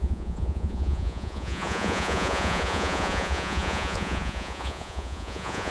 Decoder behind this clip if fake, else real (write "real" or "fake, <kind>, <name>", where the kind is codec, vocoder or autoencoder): fake, vocoder, Vocos